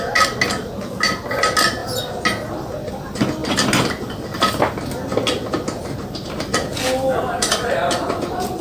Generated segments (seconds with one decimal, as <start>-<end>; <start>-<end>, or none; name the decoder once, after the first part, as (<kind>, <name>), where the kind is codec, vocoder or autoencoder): none